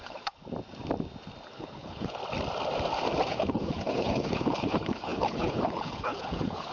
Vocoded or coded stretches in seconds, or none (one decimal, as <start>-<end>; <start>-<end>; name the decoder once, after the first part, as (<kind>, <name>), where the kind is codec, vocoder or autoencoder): 0.0-0.4 (codec, HILCodec); 1.5-2.2; 3.3-6.7